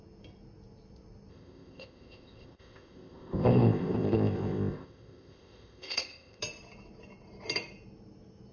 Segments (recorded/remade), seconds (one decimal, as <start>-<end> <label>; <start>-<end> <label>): 0.0-1.3 recorded; 1.3-6.4 remade; 6.4-8.5 recorded